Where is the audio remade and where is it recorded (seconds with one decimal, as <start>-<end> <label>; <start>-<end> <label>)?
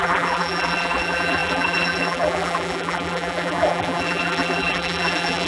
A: 0.0-5.5 remade